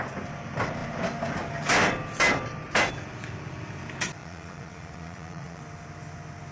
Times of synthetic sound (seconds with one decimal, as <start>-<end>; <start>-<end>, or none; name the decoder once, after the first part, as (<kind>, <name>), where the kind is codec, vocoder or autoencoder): 4.2-5.6 (vocoder, Vocos)